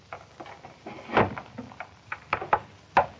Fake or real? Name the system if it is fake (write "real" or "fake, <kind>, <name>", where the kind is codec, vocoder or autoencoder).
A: real